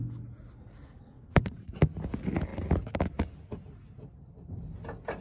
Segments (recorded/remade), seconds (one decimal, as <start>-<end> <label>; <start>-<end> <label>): 0.0-1.0 recorded; 1.0-1.6 remade; 1.6-5.2 recorded